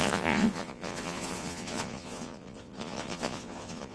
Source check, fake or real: fake